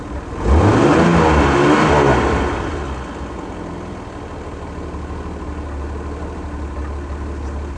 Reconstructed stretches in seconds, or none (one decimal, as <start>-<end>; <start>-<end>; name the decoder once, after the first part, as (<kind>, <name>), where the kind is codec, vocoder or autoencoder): none